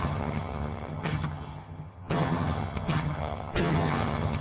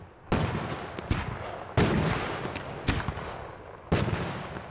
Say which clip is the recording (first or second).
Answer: second